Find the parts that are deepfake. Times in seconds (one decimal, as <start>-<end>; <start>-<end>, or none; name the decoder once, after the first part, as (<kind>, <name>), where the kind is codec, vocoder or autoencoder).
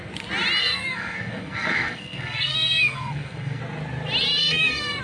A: 0.6-3.6 (codec, SNAC); 4.4-5.0